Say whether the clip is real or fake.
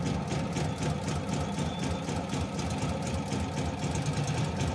real